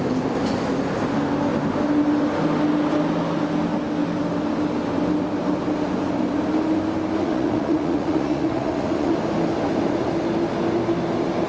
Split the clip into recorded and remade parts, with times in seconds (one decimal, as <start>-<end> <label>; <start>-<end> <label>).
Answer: 0.0-7.2 recorded; 7.2-9.1 remade; 9.1-11.5 recorded